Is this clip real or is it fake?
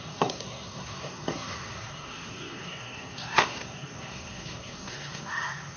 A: fake